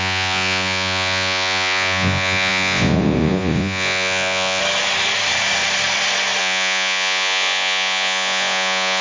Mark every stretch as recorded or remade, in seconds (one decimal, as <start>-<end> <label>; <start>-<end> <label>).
0.0-4.6 remade; 4.6-6.4 recorded; 6.4-9.0 remade